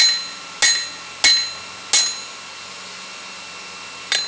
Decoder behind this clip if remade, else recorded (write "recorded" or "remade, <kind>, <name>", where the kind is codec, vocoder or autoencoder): recorded